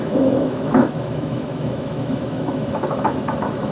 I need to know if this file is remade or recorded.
remade